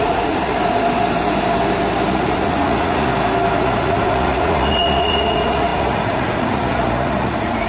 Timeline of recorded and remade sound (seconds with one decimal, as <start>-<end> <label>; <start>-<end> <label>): 0.0-0.5 remade; 0.5-2.1 recorded; 2.1-3.1 remade; 3.1-3.6 recorded; 3.6-7.7 remade